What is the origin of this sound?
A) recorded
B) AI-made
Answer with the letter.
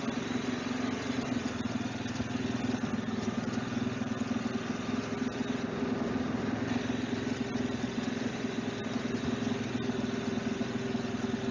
A